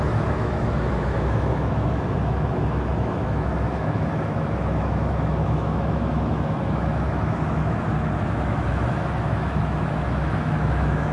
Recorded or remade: remade